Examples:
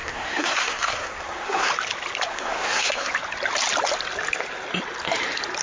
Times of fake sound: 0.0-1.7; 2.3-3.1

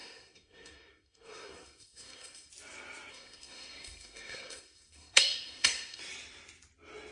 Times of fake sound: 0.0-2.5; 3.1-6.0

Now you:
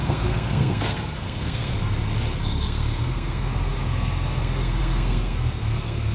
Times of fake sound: 0.0-1.8; 2.4-6.1

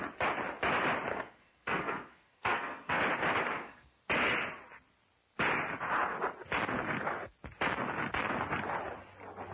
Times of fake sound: 1.1-3.0; 3.5-4.0

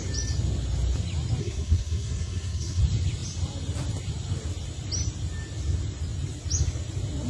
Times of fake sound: 1.4-2.8